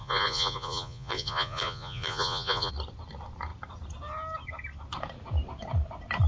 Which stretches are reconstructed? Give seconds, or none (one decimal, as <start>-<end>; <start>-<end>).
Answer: 0.0-2.7